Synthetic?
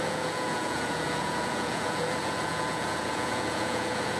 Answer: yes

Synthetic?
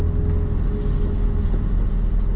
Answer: no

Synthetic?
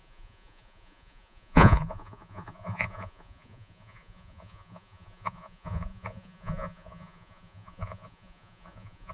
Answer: yes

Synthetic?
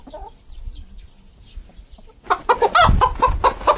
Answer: no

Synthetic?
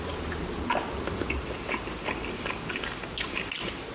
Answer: no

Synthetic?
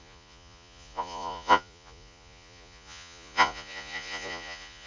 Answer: yes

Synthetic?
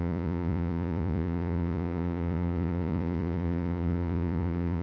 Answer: yes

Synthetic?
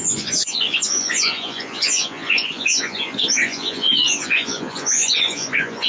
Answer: yes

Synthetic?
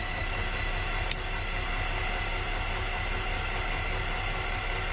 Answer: no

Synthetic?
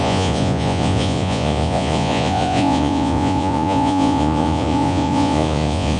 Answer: yes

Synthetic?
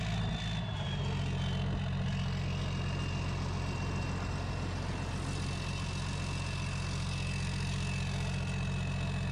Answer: no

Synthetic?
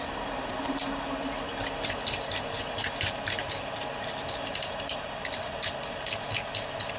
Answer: no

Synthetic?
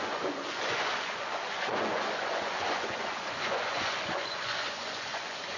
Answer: yes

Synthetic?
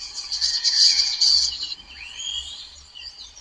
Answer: yes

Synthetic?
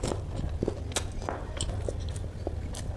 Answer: no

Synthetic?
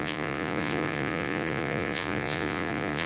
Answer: yes